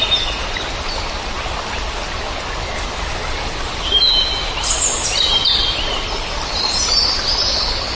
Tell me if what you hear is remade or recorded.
recorded